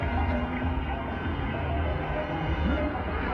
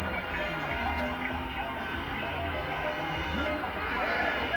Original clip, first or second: second